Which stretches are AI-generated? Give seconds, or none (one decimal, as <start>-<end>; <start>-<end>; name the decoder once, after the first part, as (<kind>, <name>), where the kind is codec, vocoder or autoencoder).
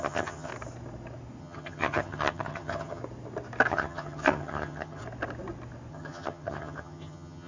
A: 0.0-0.5 (vocoder, HiFi-GAN); 1.4-3.0; 3.7-5.0; 5.9-7.5